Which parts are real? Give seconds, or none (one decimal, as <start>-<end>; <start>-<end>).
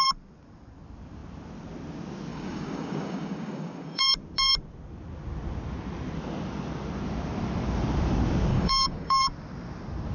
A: 0.0-2.3; 4.0-8.5; 9.3-10.1